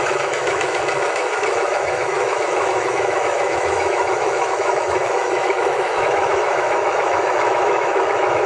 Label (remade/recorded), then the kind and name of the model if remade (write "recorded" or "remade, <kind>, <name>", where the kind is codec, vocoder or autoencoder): remade, autoencoder, DAC-VAE